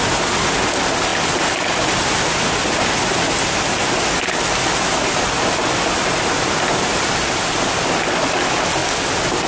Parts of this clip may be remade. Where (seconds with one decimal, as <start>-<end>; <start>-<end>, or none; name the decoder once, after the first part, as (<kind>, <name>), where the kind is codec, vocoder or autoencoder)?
none